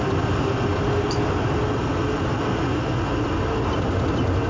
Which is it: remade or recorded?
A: recorded